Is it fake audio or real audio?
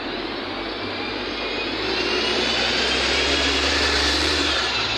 fake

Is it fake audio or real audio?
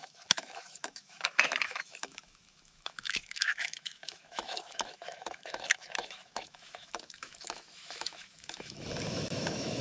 fake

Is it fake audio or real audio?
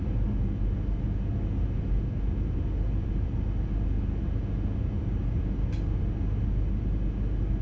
real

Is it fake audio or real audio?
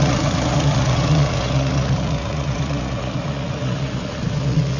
fake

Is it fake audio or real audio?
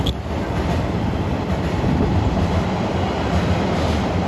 real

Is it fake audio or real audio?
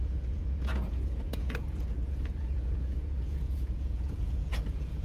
fake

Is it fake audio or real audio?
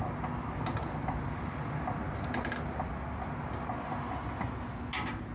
real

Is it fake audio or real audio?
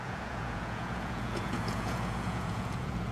fake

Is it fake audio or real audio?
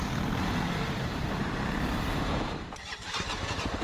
fake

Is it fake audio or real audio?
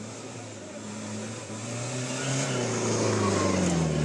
real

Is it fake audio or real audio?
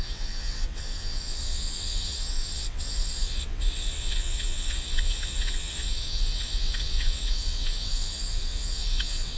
fake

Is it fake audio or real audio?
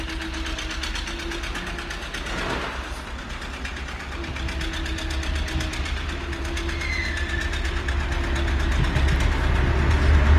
real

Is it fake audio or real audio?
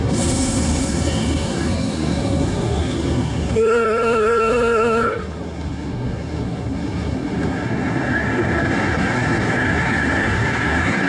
fake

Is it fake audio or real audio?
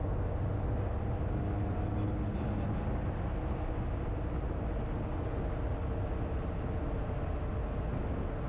real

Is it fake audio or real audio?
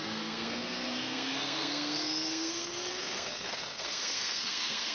fake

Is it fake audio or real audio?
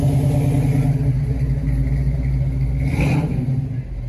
real